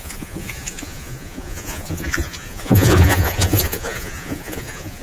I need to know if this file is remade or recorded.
remade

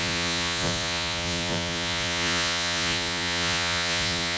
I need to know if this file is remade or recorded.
remade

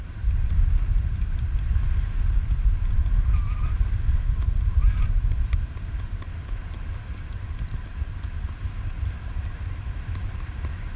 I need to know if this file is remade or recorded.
recorded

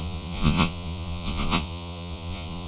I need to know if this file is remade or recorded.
remade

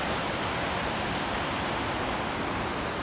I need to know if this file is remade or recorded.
recorded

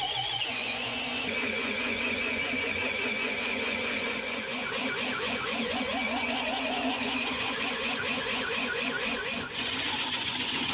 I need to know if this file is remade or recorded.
remade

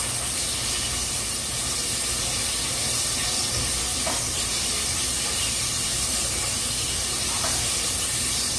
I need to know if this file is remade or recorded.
recorded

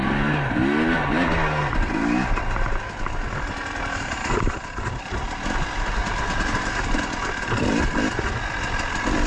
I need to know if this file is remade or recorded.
recorded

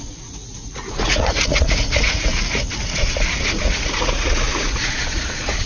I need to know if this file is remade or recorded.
remade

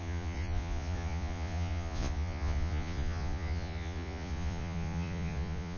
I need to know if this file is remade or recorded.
remade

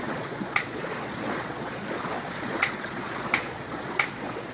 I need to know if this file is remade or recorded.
remade